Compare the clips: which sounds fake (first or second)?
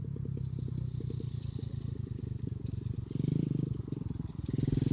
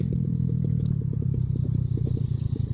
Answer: second